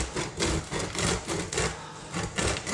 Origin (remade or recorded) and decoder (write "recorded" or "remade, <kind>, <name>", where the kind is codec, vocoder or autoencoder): recorded